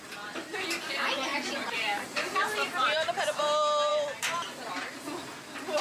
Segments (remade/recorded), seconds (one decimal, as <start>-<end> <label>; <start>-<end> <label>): 0.0-1.3 recorded; 1.3-3.2 remade; 3.2-5.8 recorded